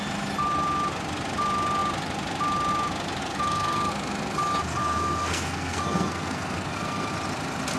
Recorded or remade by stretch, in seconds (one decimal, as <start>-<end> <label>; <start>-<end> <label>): 0.0-3.2 recorded; 3.2-3.9 remade; 3.9-4.8 recorded; 4.8-7.1 remade; 7.1-7.8 recorded